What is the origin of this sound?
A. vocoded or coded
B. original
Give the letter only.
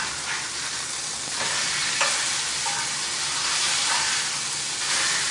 B